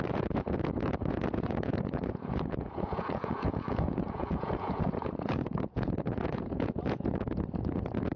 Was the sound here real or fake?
fake